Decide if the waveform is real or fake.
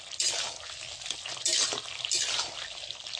real